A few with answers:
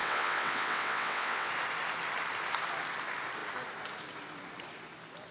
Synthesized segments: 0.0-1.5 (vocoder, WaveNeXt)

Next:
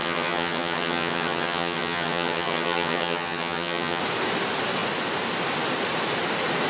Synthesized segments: 0.0-4.0 (vocoder, HiFi-GAN)

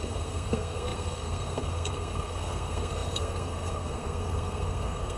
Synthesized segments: 0.0-5.2 (codec, SNAC)

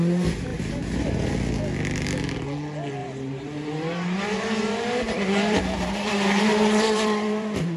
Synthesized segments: 0.5-1.3 (vocoder, BigVGAN v2); 3.0-7.8